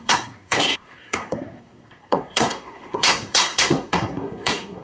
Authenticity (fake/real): fake